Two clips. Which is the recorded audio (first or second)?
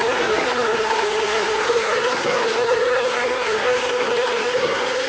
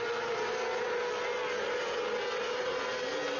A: second